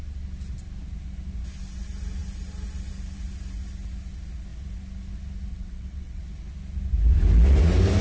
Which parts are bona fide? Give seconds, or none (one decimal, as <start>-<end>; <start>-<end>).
0.0-5.5; 6.2-8.0